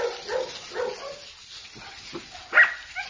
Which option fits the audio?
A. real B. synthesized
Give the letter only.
A